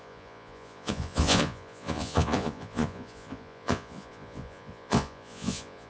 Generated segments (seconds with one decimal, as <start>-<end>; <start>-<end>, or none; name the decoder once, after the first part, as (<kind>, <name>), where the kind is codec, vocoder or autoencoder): 0.0-5.9 (vocoder, Vocos)